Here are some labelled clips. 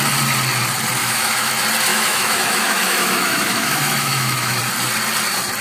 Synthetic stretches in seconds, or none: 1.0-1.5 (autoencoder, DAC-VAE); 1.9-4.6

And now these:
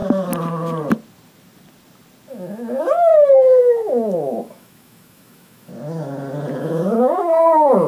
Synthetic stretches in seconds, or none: 2.3-3.1 (autoencoder, DAC-VAE); 3.6-5.7; 6.6-7.9

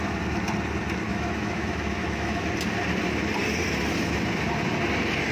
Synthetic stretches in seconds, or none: 1.1-2.5 (autoencoder, DAC-VAE)